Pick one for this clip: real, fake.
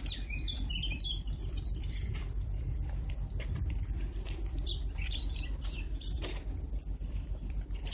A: real